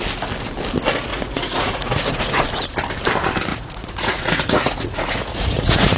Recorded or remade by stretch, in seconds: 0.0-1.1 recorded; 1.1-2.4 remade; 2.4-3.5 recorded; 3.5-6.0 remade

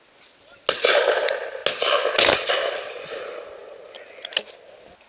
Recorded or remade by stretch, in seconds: 0.0-5.1 recorded